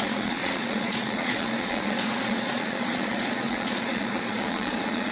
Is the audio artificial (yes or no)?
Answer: yes